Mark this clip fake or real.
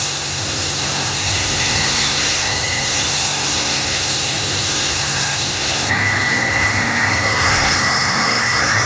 fake